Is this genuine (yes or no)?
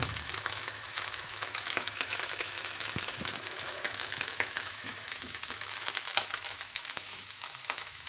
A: no